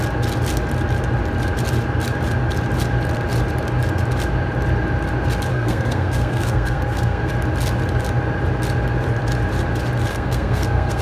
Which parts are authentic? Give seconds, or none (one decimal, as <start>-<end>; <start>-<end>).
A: 0.0-5.5; 7.3-10.1